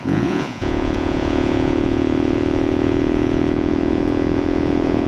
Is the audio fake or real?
fake